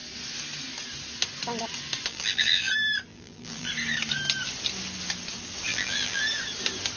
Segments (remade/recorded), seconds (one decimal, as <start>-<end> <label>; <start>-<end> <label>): 0.0-2.1 recorded; 2.1-2.7 remade; 2.7-3.1 recorded; 3.1-3.7 remade; 3.7-5.7 recorded; 5.7-6.2 remade; 6.2-7.0 recorded